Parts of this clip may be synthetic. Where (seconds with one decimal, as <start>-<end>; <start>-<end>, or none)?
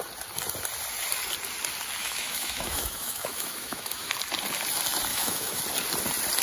2.0-4.1; 5.1-5.6